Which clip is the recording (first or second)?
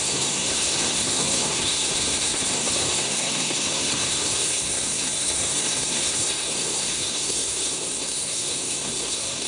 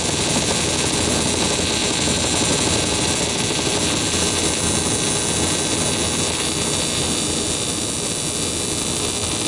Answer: second